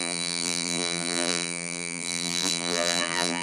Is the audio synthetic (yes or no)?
yes